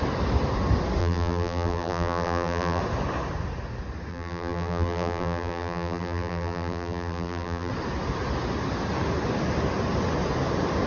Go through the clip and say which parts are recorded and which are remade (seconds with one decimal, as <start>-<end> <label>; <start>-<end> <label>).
0.0-1.0 recorded; 1.0-2.8 remade; 2.8-4.1 recorded; 4.1-7.7 remade; 7.7-10.9 recorded

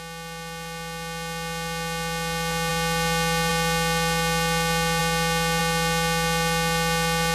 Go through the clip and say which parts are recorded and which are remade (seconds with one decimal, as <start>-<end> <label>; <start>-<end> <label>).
0.0-7.3 recorded

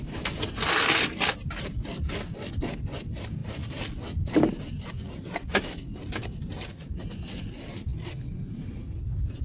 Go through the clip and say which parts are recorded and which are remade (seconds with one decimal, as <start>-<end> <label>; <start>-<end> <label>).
0.0-9.4 remade

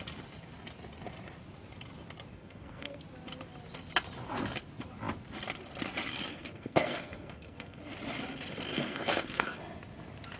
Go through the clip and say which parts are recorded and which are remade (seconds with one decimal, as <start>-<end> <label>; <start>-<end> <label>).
0.0-2.3 recorded; 2.3-3.0 remade; 3.0-6.3 recorded; 6.3-7.8 remade; 7.8-8.7 recorded; 8.7-9.6 remade; 9.6-10.4 recorded

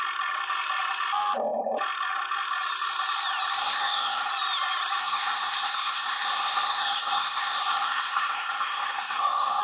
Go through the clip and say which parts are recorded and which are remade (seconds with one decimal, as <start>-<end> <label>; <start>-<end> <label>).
0.0-3.6 recorded; 3.6-4.3 remade; 4.3-5.0 recorded; 5.0-9.6 remade

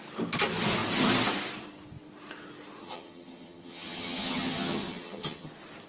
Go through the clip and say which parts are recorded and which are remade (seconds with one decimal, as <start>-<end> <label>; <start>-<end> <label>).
0.0-2.8 recorded; 2.8-5.5 remade; 5.5-5.9 recorded

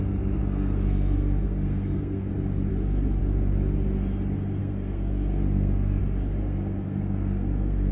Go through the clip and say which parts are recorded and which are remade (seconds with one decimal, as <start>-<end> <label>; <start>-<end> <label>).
0.0-0.4 recorded; 0.4-2.3 remade; 2.3-2.7 recorded; 2.7-3.2 remade; 3.2-4.6 recorded; 4.6-6.0 remade; 6.0-6.4 recorded; 6.4-7.9 remade

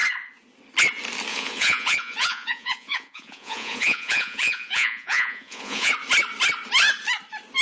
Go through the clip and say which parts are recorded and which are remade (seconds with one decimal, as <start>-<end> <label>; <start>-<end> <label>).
0.0-1.3 recorded; 1.3-5.9 remade; 5.9-7.6 recorded